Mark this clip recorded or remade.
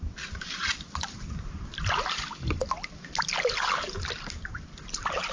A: recorded